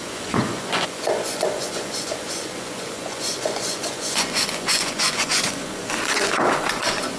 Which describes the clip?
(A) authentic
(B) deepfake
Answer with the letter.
B